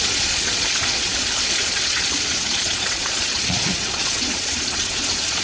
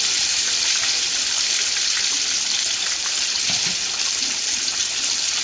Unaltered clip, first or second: second